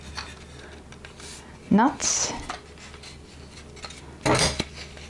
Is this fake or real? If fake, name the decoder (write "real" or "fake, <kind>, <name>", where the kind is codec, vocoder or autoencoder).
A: real